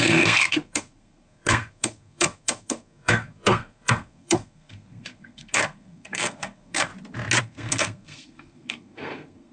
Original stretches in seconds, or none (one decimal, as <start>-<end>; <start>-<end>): 6.9-7.4